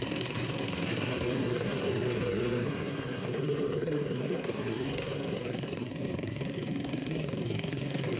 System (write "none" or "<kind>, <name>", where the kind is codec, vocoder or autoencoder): codec, SNAC